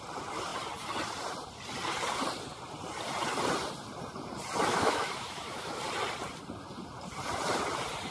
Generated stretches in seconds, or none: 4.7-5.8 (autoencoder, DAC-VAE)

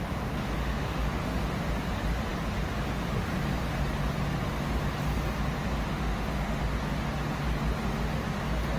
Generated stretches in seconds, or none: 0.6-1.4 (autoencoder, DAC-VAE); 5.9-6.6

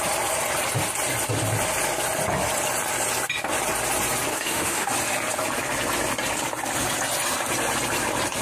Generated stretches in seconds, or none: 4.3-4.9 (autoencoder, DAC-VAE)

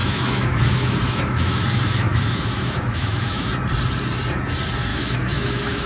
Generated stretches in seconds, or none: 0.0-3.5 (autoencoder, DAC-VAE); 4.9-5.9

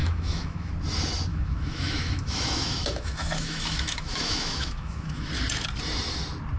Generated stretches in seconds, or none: 0.0-0.7 (autoencoder, DAC-VAE); 1.3-5.3